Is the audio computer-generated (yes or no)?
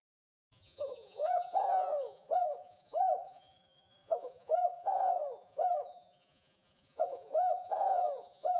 yes